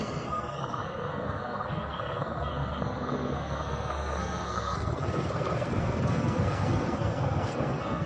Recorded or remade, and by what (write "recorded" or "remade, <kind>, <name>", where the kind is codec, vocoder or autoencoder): remade, codec, SNAC